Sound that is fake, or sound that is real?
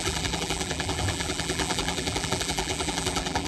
fake